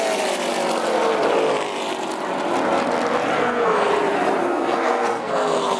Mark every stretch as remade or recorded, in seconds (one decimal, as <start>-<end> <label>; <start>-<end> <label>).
0.0-3.4 recorded; 3.4-3.9 remade; 3.9-4.4 recorded; 4.4-5.8 remade